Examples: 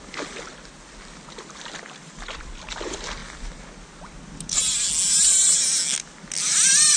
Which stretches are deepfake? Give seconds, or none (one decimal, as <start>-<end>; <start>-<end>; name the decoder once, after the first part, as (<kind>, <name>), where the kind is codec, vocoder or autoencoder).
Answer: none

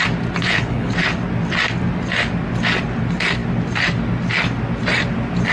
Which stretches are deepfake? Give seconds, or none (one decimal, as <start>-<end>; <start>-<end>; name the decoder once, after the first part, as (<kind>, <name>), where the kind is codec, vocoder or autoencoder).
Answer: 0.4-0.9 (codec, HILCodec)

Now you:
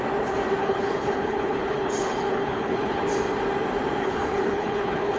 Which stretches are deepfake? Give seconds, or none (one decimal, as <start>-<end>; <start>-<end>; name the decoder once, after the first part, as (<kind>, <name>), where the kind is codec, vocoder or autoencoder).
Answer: 0.6-3.0 (codec, HILCodec); 4.0-5.2

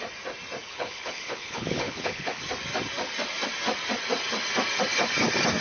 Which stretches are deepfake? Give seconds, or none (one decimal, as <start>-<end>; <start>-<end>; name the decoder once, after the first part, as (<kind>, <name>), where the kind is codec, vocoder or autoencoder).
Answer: 0.6-2.4 (codec, HILCodec)

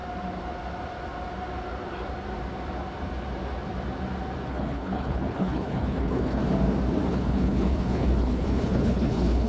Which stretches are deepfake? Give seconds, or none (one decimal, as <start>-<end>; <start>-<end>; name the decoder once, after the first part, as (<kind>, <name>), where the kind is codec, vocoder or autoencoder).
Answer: 4.5-6.4 (codec, HILCodec); 7.1-9.5

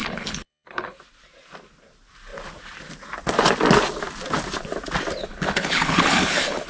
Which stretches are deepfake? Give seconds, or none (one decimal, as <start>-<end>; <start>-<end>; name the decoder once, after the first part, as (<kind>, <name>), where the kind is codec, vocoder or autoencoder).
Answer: 0.0-1.0 (codec, HILCodec); 5.2-6.7

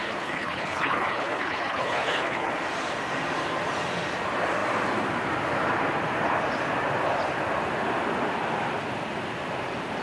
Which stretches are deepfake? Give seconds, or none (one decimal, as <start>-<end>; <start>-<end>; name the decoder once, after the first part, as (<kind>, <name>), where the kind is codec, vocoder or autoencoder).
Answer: 0.0-2.5 (codec, HILCodec)